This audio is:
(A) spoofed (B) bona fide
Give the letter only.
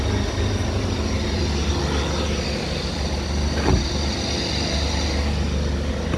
B